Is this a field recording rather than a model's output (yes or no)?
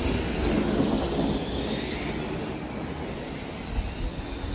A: yes